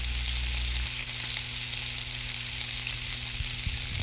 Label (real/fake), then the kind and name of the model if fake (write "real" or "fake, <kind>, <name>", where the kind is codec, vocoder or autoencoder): real